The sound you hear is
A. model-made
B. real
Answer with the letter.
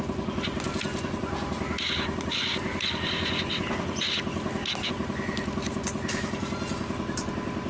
B